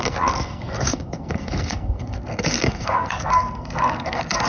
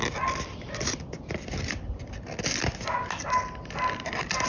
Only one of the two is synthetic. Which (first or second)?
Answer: first